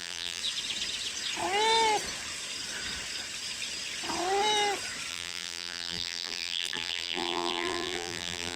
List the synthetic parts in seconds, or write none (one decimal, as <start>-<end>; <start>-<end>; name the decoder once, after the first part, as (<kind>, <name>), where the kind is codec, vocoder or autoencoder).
0.0-0.4 (vocoder, BigVGAN v2); 5.1-8.6

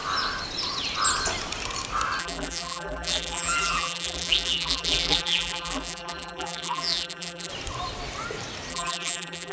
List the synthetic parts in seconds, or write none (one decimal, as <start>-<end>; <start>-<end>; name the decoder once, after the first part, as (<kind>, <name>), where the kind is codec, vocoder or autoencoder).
2.2-7.5 (vocoder, BigVGAN v2); 8.7-9.5

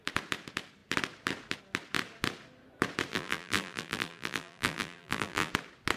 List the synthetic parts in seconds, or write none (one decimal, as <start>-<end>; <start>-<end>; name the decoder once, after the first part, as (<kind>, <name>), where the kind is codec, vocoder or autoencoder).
3.1-5.5 (vocoder, BigVGAN v2)

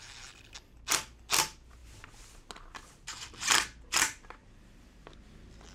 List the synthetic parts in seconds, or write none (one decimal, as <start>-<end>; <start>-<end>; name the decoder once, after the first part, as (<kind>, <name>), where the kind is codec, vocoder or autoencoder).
none

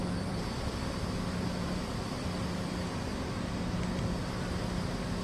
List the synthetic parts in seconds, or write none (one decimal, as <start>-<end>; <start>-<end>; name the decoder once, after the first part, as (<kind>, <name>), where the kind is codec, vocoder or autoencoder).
0.0-1.1 (vocoder, BigVGAN v2)

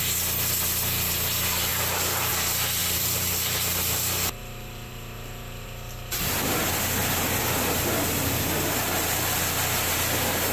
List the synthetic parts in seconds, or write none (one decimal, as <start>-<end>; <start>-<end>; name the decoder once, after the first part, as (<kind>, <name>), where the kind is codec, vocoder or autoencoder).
1.7-2.3 (vocoder, BigVGAN v2); 2.8-6.4

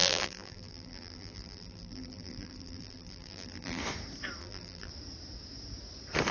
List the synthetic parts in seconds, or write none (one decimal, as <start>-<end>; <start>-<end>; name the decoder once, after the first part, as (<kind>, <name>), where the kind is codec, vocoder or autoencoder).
0.0-3.8 (vocoder, BigVGAN v2); 4.4-4.9